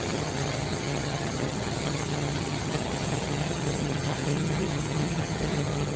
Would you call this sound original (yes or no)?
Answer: no